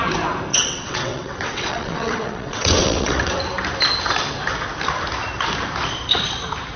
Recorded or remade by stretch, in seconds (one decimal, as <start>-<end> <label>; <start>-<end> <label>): 0.0-0.5 recorded; 0.5-3.4 remade; 3.4-6.8 recorded